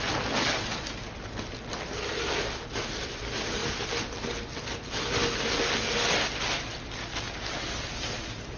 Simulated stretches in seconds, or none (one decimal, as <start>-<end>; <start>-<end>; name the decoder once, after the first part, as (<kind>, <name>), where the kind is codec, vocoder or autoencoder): none